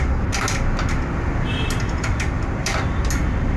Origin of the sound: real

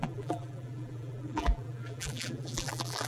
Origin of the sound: fake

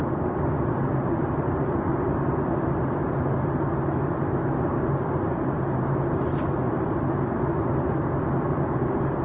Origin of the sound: real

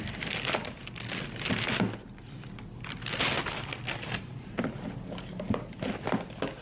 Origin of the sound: real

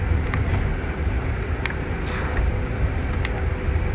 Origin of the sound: real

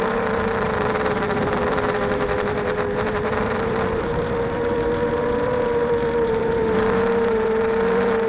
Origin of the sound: fake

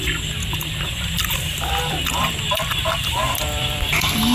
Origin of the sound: fake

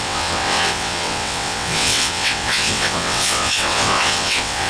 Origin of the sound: fake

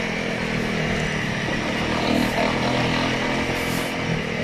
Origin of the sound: real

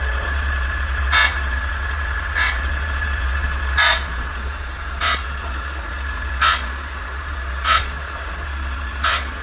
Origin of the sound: fake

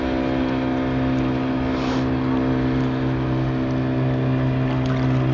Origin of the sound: real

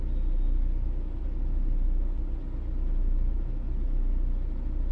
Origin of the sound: real